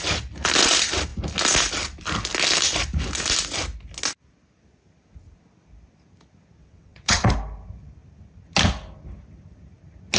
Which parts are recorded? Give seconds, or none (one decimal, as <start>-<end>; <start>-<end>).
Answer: 0.0-6.6; 7.3-10.2